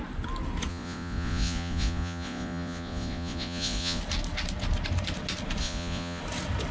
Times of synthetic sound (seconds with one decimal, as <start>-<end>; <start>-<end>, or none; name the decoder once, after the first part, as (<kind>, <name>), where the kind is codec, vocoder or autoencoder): 0.7-4.0 (vocoder, Vocos); 5.6-6.2